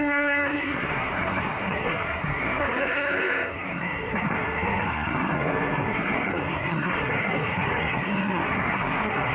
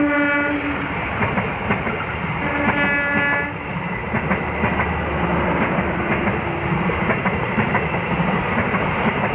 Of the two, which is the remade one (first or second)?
first